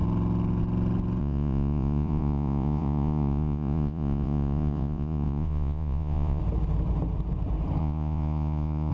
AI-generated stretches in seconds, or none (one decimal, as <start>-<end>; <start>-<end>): 1.2-6.4; 7.8-8.9